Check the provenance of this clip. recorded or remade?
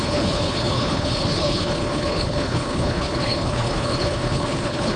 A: remade